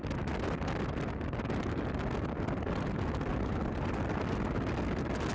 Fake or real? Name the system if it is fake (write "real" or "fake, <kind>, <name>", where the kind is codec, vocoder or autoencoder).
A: real